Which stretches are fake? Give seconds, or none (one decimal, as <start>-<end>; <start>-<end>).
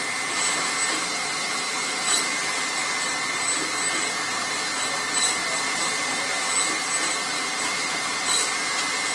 none